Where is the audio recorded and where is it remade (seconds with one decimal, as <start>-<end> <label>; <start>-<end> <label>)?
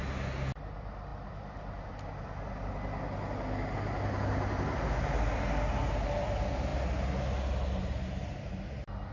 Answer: 0.0-9.1 recorded